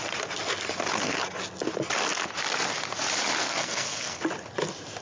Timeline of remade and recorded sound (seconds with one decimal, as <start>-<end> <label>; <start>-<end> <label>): 0.0-3.4 recorded; 3.4-4.2 remade; 4.2-5.0 recorded